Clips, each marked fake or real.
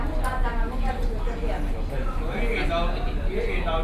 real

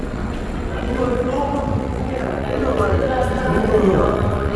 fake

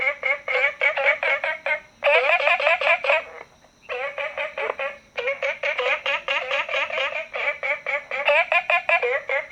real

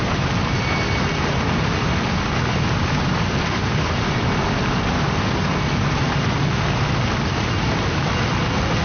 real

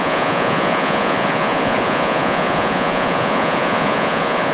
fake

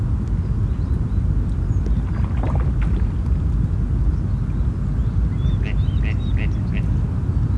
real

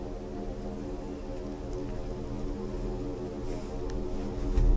real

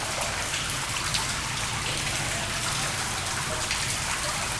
real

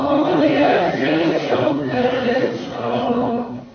fake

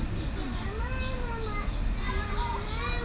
real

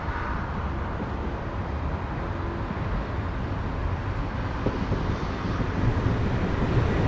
real